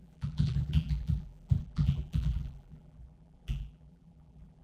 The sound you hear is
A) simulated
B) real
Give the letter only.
A